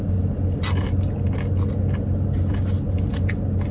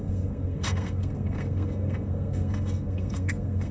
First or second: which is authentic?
first